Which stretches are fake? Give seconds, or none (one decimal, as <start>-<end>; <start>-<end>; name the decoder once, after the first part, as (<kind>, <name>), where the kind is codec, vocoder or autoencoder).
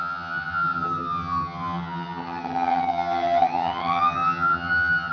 0.0-5.1 (vocoder, HiFi-GAN)